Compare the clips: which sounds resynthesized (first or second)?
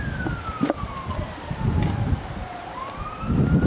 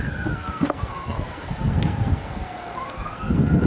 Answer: second